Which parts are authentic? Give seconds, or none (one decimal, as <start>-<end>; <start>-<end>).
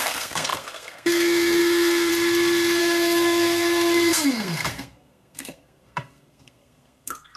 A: 2.1-2.8